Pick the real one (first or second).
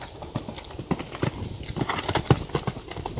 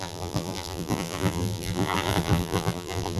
first